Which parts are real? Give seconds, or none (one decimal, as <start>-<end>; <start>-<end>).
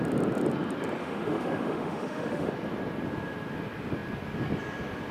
0.0-1.0; 2.5-5.1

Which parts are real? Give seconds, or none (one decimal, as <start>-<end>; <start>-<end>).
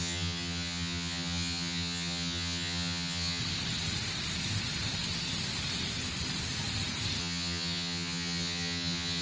3.4-7.2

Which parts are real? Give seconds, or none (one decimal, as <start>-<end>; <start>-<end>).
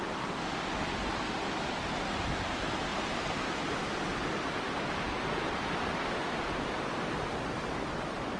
0.0-8.4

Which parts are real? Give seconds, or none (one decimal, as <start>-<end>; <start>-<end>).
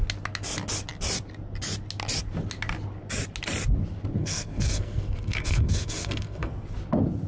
0.0-4.2; 6.5-7.3